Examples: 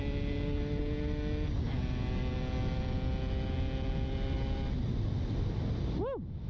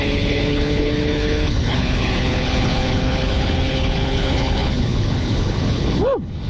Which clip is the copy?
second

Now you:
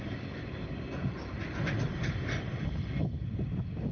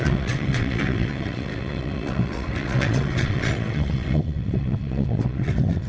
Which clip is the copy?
second